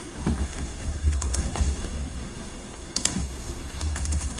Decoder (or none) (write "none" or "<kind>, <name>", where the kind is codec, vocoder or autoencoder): codec, SNAC